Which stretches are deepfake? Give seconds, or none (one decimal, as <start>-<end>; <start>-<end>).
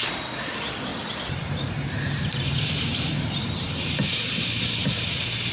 0.9-3.9